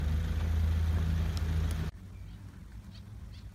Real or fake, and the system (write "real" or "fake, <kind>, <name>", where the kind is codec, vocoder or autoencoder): real